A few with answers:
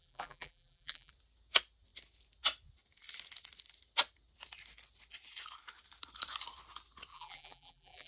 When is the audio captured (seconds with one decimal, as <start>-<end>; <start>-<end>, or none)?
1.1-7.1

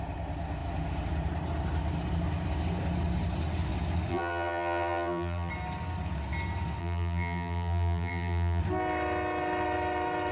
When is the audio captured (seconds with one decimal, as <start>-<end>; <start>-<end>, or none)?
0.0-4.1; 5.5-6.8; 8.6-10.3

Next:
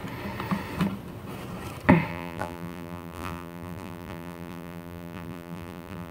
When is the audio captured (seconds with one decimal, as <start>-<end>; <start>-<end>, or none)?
0.0-2.1

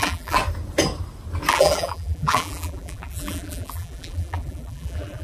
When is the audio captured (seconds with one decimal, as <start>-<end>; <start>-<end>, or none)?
0.4-1.5

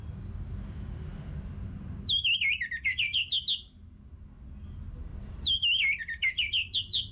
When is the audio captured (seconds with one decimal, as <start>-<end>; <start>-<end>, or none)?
0.0-7.1

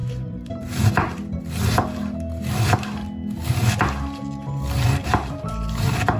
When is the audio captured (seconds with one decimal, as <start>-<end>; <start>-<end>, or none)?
1.4-5.0

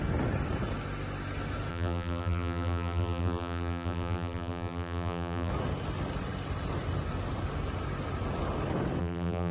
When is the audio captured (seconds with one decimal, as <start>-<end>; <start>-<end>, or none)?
0.0-1.7; 5.5-9.0